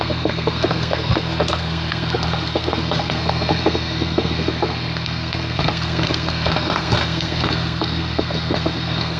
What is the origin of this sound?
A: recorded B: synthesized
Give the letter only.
B